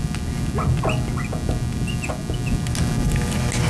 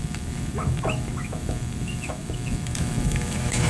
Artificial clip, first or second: second